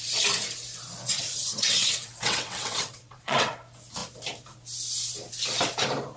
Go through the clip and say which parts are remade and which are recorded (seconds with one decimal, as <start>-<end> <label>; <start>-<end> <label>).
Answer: 0.0-1.1 recorded; 1.1-3.5 remade; 3.5-6.2 recorded